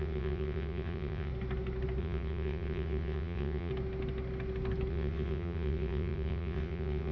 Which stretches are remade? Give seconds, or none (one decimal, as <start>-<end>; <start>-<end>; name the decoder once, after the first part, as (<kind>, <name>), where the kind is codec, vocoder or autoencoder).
0.0-1.3 (vocoder, WaveNeXt); 2.0-3.7; 4.9-7.1